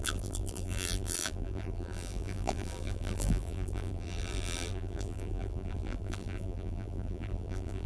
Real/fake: fake